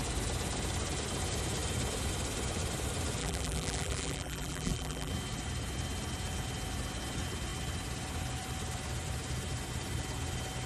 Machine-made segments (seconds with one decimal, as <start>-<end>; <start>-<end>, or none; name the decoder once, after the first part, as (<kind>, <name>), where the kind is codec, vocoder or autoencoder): 3.2-5.1 (vocoder, BigVGAN v2)

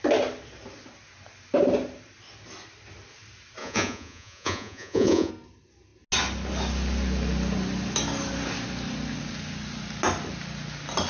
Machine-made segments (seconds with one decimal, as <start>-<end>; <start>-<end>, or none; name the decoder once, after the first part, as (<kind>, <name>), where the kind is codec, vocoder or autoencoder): 3.6-5.3 (vocoder, Vocos)

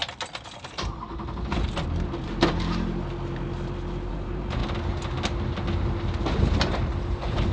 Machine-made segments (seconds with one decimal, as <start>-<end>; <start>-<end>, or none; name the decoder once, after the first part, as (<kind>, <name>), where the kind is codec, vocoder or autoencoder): 4.1-4.6 (vocoder, BigVGAN v2); 6.4-7.5

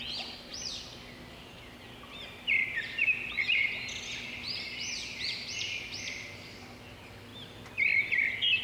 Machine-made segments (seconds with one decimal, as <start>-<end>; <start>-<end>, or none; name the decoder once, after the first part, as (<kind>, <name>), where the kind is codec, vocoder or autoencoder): 0.0-0.5 (vocoder, BigVGAN v2); 2.8-7.3; 8.2-8.6

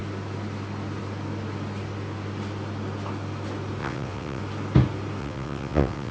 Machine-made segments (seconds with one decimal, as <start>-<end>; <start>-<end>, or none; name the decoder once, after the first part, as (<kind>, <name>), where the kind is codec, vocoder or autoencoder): 3.8-4.4 (vocoder, WaveNeXt); 5.2-6.1

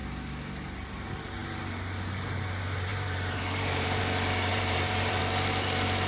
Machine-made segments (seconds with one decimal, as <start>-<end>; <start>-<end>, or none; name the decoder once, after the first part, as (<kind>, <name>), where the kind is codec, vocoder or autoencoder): 2.9-4.0 (vocoder, BigVGAN v2); 4.5-5.2

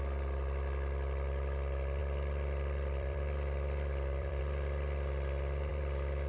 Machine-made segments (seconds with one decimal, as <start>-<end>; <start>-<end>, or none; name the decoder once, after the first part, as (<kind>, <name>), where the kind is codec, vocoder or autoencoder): 2.0-4.4 (vocoder, BigVGAN v2); 5.7-6.3